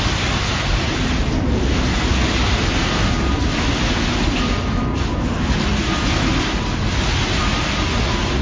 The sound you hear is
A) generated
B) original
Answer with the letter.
B